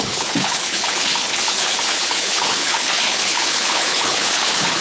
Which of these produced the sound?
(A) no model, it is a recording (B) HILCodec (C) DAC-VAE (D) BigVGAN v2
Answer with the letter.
B